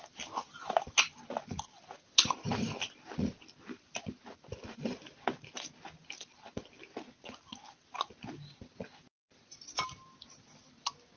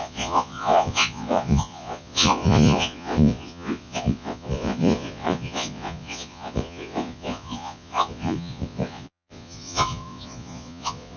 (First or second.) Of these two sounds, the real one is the first